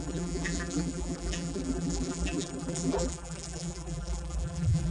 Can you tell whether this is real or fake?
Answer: fake